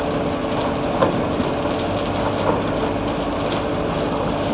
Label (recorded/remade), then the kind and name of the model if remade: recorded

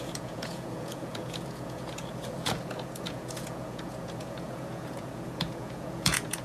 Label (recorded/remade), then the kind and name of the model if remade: remade, vocoder, Vocos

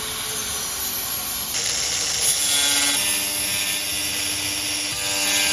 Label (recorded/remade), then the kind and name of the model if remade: recorded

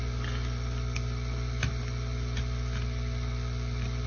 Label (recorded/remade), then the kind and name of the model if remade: recorded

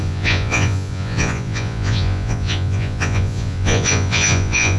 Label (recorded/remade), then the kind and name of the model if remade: remade, vocoder, Vocos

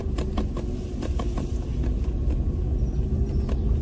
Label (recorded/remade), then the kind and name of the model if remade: recorded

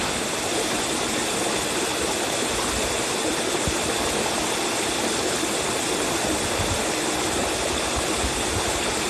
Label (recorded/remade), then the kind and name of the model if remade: recorded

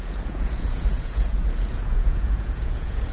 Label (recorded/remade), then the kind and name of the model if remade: remade, vocoder, Vocos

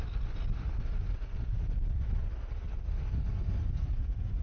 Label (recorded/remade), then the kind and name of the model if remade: recorded